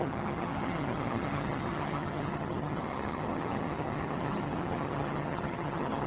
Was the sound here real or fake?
fake